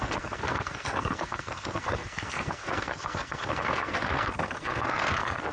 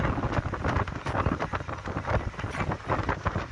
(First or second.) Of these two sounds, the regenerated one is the first